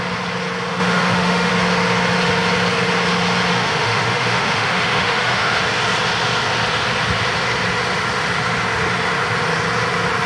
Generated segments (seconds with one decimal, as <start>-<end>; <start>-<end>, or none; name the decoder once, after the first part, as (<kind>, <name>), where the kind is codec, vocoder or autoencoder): 0.7-1.5 (autoencoder, DAC-VAE); 3.5-5.6